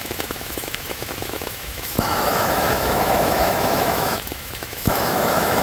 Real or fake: fake